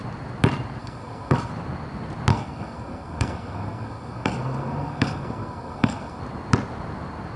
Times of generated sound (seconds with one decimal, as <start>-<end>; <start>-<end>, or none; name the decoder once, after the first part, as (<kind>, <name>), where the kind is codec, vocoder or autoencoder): 0.8-1.5 (codec, SNAC); 2.3-6.2